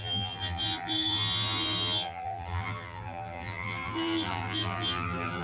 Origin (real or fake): fake